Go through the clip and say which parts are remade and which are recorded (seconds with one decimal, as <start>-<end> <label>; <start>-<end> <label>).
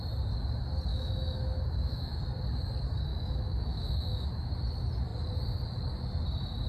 0.0-0.9 recorded; 0.9-2.2 remade; 2.2-3.1 recorded; 3.1-4.5 remade; 4.5-6.7 recorded